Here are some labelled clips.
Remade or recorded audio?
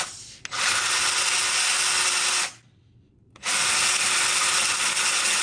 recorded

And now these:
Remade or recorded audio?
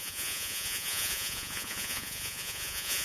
remade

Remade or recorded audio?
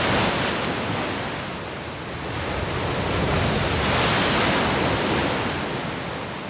recorded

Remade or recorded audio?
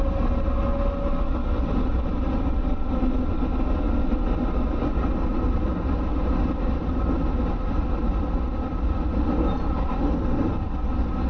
recorded